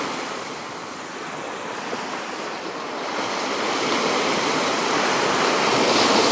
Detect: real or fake fake